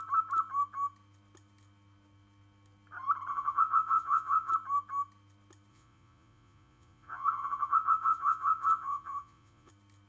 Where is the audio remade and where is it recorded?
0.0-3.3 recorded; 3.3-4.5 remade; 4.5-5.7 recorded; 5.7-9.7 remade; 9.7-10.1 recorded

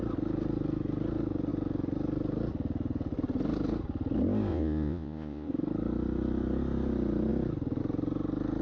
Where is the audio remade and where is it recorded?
0.0-4.5 recorded; 4.5-5.5 remade; 5.5-8.6 recorded

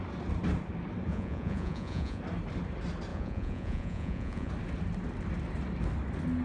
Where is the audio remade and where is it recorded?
0.0-1.1 recorded; 1.1-2.2 remade; 2.2-3.1 recorded; 3.1-4.5 remade; 4.5-6.4 recorded

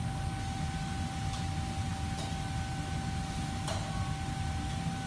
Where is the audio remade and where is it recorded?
0.0-5.1 recorded

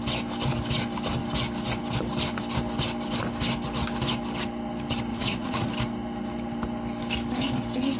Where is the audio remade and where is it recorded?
0.0-5.1 recorded; 5.1-5.7 remade; 5.7-8.0 recorded